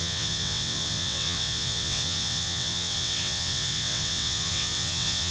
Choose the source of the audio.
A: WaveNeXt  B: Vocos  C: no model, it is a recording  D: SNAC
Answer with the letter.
A